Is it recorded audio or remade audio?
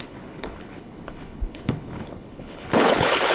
remade